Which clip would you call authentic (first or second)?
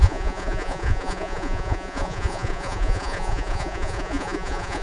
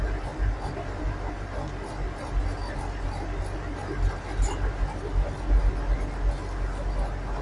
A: second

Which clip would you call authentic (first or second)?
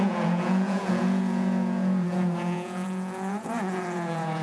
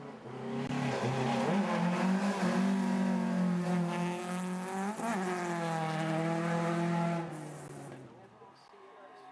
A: second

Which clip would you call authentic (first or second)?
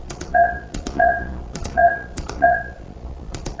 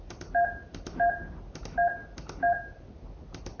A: second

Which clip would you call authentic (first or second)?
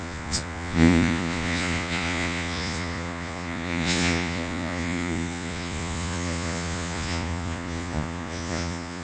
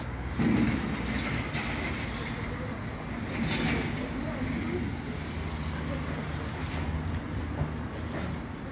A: second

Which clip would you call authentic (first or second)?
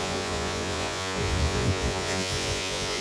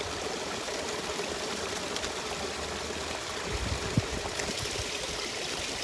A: second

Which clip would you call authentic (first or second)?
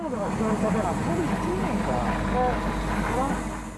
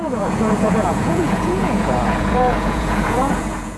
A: first